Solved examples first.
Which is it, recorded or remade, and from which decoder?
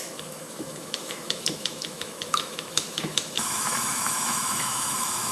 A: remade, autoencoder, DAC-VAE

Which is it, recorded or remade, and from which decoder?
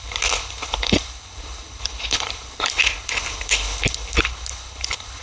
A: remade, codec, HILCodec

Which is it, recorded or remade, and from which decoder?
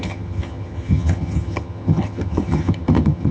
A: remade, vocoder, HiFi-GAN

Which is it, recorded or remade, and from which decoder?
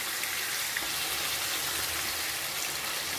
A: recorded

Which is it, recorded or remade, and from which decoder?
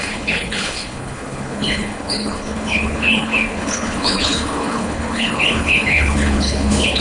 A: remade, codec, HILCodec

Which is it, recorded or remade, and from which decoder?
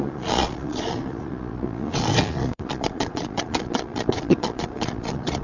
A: remade, vocoder, Vocos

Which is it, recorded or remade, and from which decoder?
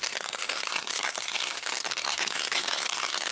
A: remade, codec, SNAC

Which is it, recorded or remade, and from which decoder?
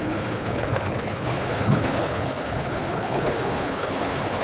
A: remade, codec, HILCodec